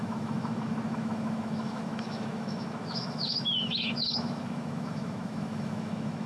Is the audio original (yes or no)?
no